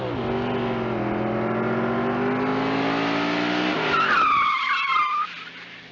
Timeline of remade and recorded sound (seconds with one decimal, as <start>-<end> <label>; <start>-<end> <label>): 0.0-5.9 recorded